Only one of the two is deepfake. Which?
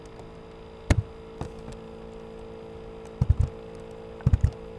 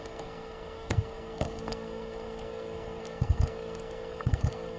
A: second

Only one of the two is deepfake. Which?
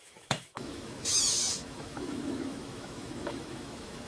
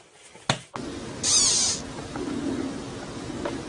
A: first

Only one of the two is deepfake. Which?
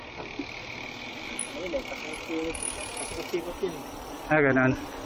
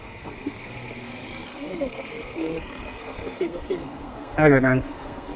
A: second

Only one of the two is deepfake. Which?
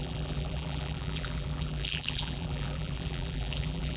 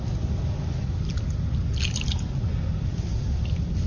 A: first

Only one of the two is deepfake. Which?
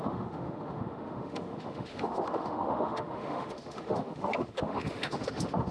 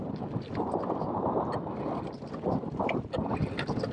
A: first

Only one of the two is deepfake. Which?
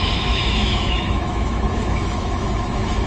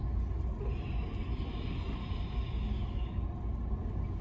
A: first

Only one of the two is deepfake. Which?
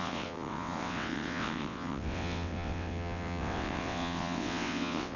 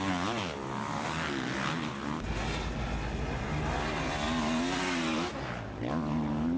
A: first